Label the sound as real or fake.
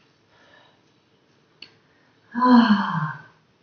real